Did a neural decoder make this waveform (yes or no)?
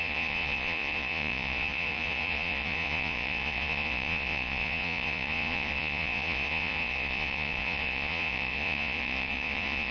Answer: yes